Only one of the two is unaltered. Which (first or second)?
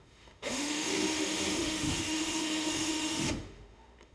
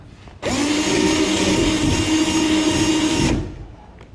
second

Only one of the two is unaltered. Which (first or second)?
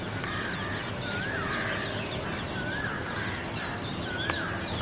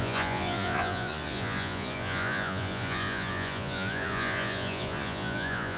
first